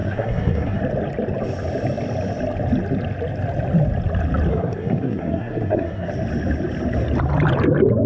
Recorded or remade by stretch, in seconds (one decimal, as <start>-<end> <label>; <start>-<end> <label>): 0.0-0.8 remade; 0.8-4.5 recorded; 4.5-6.1 remade; 6.1-8.1 recorded